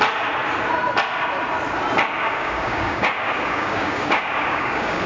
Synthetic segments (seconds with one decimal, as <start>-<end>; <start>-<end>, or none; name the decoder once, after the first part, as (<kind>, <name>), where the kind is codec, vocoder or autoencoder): 2.2-5.1 (codec, DAC)